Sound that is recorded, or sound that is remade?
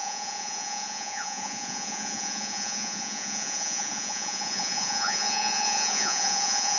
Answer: remade